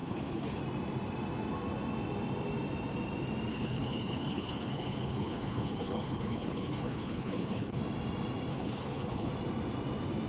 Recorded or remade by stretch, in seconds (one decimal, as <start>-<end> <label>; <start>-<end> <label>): 0.0-0.6 remade; 0.6-3.5 recorded; 3.5-7.8 remade; 7.8-8.5 recorded; 8.5-9.3 remade; 9.3-10.3 recorded